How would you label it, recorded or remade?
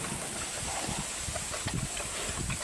recorded